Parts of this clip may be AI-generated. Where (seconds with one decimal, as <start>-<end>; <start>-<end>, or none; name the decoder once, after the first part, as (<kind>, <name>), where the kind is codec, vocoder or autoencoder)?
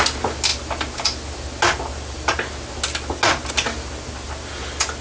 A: none